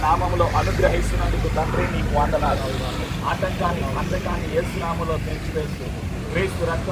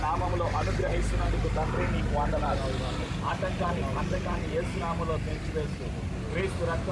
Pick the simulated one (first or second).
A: first